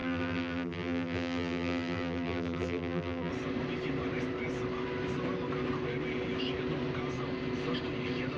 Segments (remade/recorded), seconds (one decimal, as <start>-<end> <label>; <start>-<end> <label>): 0.0-3.3 remade; 3.3-8.4 recorded